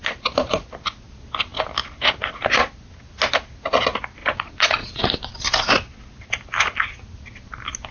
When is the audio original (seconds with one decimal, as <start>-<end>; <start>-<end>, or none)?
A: 0.0-4.2; 5.0-7.9